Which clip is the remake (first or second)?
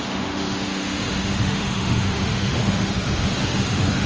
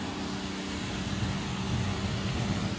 first